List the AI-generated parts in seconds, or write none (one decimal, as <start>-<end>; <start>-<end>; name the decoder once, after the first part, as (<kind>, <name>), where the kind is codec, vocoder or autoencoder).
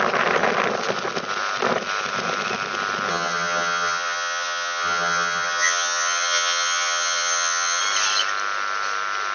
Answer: 3.1-7.8 (vocoder, HiFi-GAN)